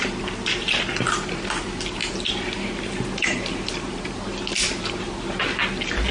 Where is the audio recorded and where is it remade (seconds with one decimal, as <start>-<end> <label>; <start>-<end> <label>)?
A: 0.0-6.1 recorded